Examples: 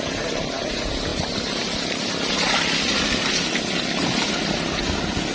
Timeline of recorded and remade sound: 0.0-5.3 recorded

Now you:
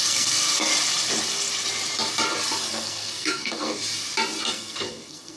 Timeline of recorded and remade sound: 0.0-0.7 remade; 0.7-2.7 recorded; 2.7-3.8 remade; 3.8-4.4 recorded; 4.4-5.4 remade

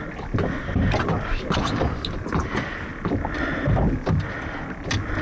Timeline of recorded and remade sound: 0.0-5.2 recorded

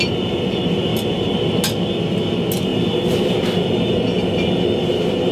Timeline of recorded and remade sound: 0.0-5.3 recorded

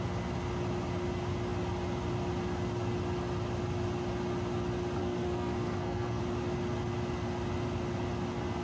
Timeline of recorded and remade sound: 0.0-5.0 recorded; 5.0-6.2 remade; 6.2-8.6 recorded

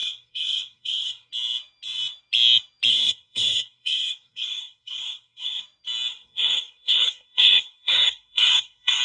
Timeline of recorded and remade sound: 0.0-1.3 remade; 1.3-2.9 recorded; 2.9-5.6 remade; 5.6-6.1 recorded; 6.1-9.0 remade

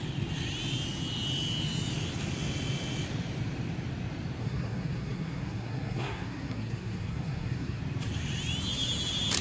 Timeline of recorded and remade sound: 0.0-4.4 recorded; 4.4-7.8 remade; 7.8-9.4 recorded